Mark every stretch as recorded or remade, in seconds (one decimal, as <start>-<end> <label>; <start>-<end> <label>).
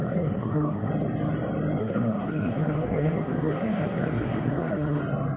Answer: 0.0-0.9 remade; 0.9-1.8 recorded; 1.8-5.0 remade; 5.0-5.4 recorded